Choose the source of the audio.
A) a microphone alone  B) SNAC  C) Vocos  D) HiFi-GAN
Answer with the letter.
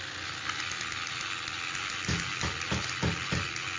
A